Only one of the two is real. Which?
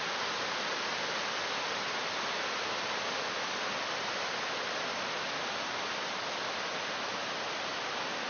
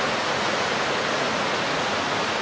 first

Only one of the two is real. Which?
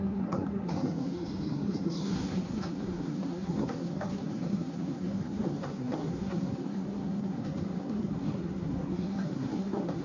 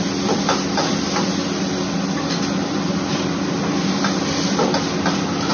second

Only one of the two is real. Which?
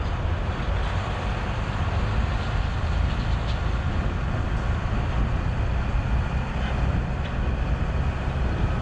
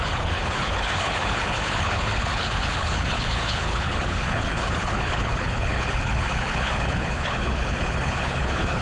first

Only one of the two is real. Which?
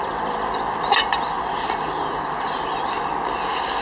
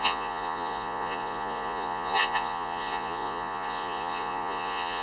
first